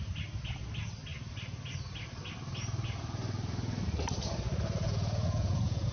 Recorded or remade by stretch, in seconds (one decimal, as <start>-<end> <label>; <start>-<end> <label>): 0.0-4.8 recorded; 4.8-5.9 remade